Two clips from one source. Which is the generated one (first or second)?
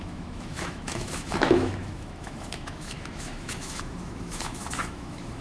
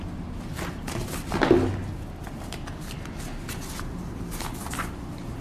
first